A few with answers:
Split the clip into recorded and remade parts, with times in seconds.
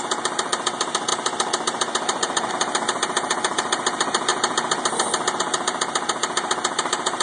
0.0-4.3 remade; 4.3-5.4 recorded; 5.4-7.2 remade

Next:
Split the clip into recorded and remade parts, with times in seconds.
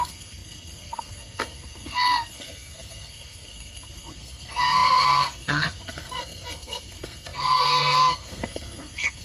0.0-9.2 remade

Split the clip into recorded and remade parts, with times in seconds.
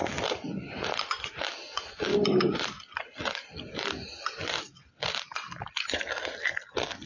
0.0-7.1 recorded